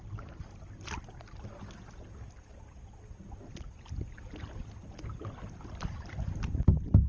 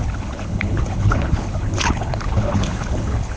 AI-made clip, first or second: second